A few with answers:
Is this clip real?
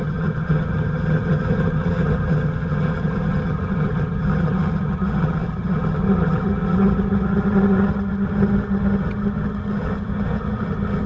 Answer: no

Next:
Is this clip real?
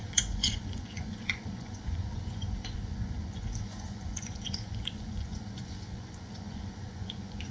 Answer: no